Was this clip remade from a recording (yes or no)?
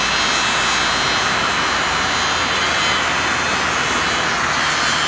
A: no